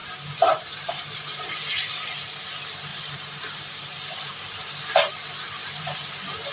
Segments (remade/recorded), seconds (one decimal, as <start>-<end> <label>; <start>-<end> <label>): 0.0-2.2 remade; 2.2-2.9 recorded; 2.9-4.6 remade; 4.6-5.6 recorded; 5.6-6.1 remade; 6.1-6.5 recorded